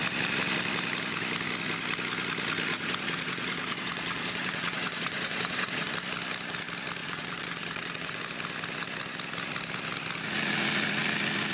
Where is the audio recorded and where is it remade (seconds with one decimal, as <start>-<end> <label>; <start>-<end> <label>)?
0.0-2.7 recorded; 2.7-5.9 remade; 5.9-7.0 recorded; 7.0-8.2 remade; 8.2-11.5 recorded